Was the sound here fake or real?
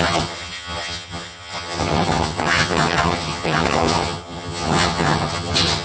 fake